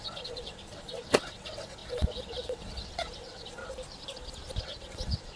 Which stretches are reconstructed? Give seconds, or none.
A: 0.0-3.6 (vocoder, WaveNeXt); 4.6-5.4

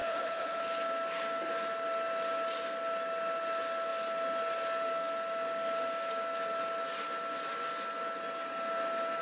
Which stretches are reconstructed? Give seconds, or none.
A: 0.0-0.6 (codec, HILCodec)